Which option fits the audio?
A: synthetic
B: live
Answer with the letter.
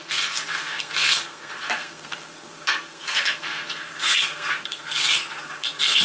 A